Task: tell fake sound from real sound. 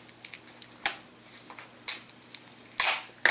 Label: real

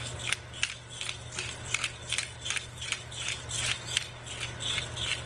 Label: real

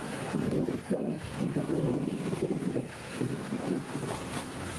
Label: fake